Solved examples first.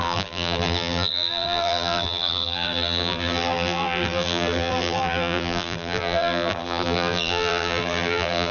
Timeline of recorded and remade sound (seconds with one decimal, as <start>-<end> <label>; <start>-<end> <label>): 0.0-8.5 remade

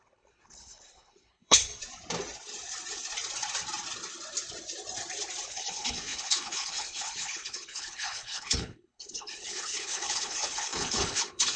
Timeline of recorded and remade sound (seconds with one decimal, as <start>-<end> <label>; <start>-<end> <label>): 0.0-1.7 remade; 1.7-5.5 recorded; 5.5-11.6 remade

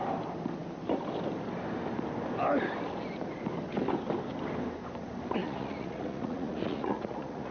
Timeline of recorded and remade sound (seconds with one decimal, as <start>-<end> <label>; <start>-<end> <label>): 0.0-5.4 recorded; 5.4-7.5 remade

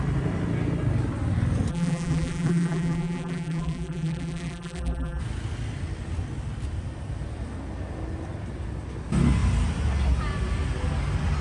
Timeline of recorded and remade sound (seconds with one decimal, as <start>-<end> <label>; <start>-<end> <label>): 0.0-1.7 recorded; 1.7-5.2 remade; 5.2-11.4 recorded

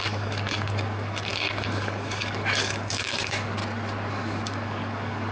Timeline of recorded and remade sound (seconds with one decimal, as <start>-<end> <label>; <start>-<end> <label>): 0.0-3.6 remade; 3.6-4.1 recorded; 4.1-5.3 remade

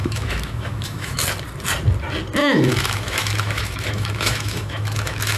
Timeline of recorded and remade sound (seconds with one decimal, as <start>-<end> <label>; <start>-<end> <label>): 0.0-1.2 remade; 1.2-2.4 recorded; 2.4-5.4 remade